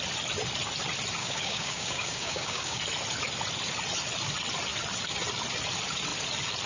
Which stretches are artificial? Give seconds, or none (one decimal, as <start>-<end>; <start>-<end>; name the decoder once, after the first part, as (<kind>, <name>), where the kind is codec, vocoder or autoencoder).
1.2-2.8 (codec, DAC)